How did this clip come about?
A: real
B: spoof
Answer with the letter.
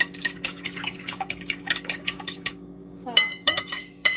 B